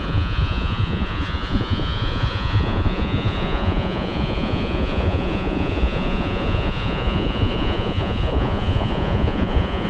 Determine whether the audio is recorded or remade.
remade